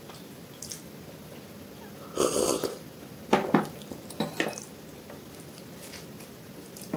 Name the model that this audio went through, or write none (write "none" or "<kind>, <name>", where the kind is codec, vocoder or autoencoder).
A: none